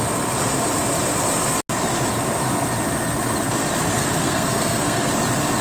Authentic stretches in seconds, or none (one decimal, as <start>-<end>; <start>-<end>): 0.0-3.9; 5.1-5.6